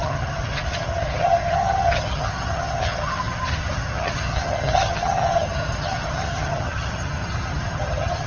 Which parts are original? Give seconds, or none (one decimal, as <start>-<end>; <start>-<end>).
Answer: none